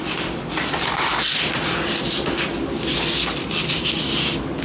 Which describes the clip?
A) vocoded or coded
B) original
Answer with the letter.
B